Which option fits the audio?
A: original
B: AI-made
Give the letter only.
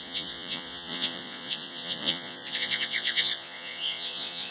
B